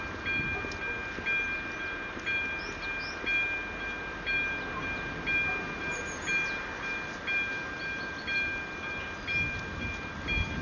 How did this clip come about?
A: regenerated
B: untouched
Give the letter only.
B